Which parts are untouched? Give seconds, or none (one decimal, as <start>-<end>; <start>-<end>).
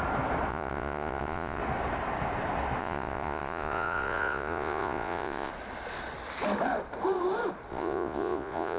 0.0-0.5; 1.6-2.8; 5.5-7.7